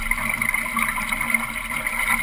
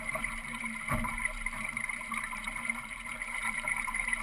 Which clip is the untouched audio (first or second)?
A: first